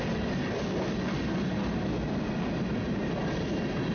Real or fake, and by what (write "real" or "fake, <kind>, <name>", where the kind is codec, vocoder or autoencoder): real